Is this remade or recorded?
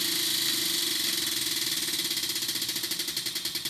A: recorded